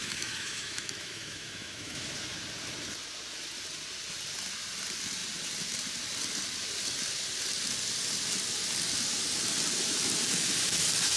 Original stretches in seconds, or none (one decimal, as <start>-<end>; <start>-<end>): 2.1-11.2